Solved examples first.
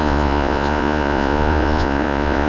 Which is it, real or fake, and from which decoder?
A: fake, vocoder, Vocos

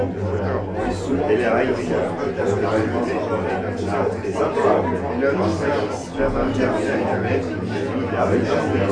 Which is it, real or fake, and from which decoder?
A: real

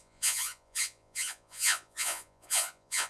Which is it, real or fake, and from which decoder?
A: fake, vocoder, Vocos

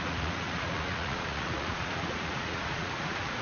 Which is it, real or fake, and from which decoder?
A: fake, vocoder, Vocos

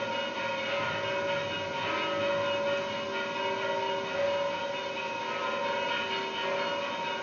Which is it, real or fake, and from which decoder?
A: real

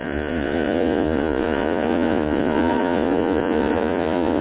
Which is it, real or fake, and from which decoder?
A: fake, vocoder, Vocos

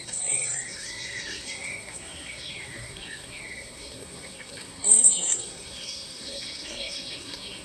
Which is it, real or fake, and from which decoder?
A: fake, codec, SNAC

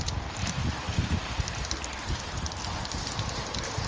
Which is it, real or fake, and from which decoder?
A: real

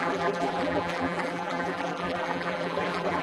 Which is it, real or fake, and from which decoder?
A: fake, vocoder, BigVGAN v2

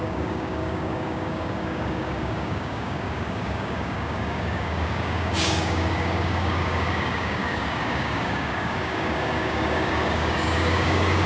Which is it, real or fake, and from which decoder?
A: fake, codec, DAC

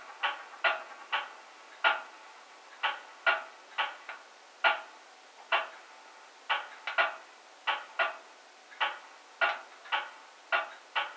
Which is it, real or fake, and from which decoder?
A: real